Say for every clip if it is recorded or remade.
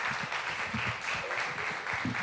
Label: recorded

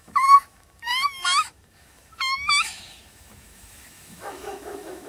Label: remade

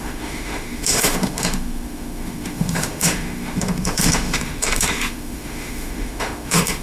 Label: remade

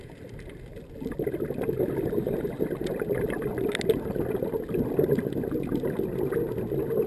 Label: recorded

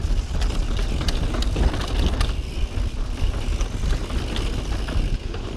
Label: recorded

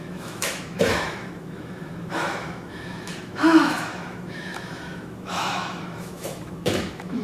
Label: remade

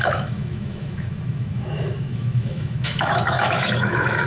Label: remade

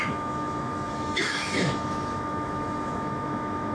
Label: remade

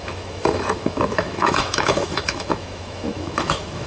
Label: remade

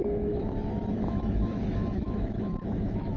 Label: remade